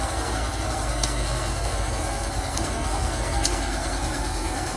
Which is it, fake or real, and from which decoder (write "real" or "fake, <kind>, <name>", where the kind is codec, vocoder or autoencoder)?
fake, codec, SNAC